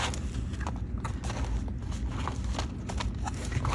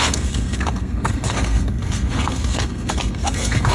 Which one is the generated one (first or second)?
second